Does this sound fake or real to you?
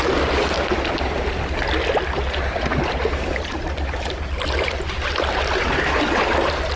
real